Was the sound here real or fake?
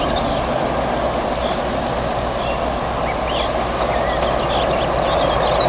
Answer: real